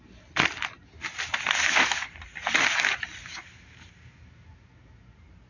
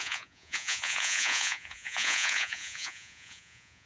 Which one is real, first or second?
first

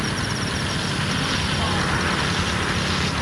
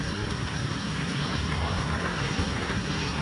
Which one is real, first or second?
first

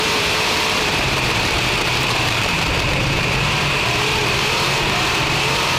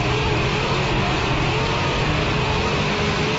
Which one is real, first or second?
second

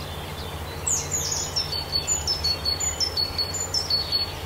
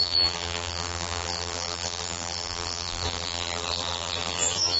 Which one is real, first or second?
first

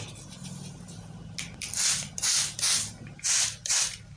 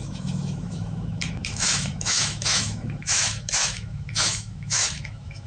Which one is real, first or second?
first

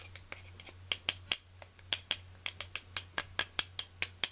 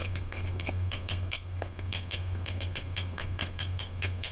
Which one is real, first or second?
first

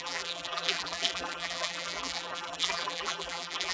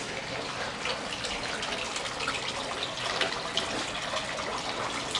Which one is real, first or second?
second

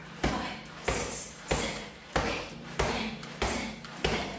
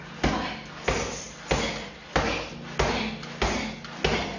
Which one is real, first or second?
second